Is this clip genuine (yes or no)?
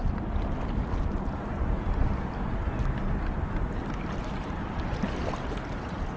yes